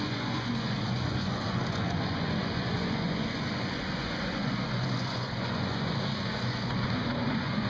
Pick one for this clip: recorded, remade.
remade